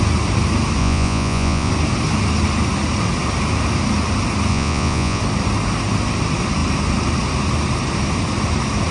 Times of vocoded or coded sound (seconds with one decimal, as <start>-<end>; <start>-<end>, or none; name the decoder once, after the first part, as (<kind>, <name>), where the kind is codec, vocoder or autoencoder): 0.8-1.7 (vocoder, Vocos); 4.5-5.2

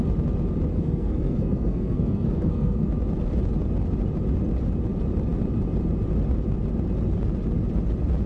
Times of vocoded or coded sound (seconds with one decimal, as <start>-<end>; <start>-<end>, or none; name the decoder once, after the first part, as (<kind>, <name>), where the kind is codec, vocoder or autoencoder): 0.7-2.9 (codec, SNAC)

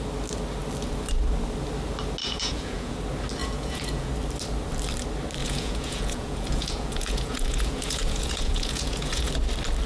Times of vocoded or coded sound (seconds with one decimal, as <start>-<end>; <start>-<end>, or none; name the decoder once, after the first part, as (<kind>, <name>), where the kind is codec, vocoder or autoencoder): 2.2-3.0 (vocoder, Vocos); 3.4-4.1; 5.4-9.3

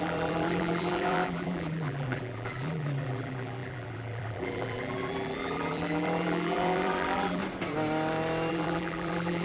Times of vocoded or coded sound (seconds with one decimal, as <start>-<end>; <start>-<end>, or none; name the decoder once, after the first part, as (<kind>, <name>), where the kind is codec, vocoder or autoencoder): 0.0-7.4 (vocoder, BigVGAN v2); 8.5-9.4

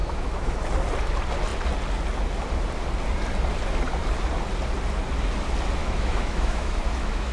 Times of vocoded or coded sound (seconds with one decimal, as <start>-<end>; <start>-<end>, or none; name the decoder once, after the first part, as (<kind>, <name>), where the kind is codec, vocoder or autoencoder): 0.0-0.6 (autoencoder, DAC-VAE); 5.8-7.3